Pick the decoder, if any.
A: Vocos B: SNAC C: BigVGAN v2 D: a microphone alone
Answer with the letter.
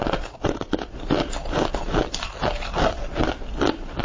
D